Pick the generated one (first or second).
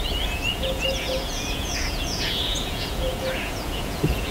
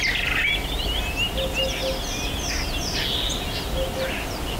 first